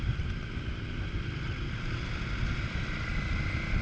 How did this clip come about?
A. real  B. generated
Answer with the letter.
A